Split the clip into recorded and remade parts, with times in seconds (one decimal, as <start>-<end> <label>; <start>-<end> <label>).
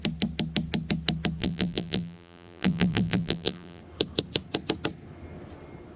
0.0-1.4 recorded; 1.4-3.8 remade; 3.8-6.0 recorded